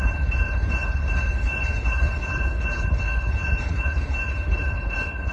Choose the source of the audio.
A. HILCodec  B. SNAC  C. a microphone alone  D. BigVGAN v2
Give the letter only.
A